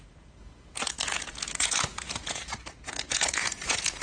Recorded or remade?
remade